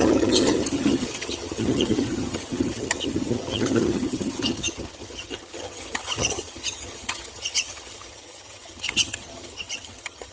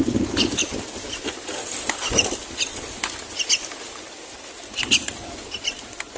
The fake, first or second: first